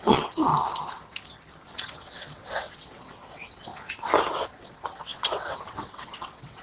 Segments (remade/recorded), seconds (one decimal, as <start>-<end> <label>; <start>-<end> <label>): 0.0-0.5 remade; 0.5-1.7 recorded; 1.7-3.7 remade; 3.7-4.3 recorded; 4.3-6.6 remade